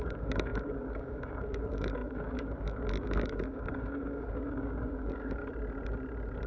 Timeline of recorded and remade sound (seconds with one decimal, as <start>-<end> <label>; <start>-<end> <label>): 0.0-5.4 remade; 5.4-6.5 recorded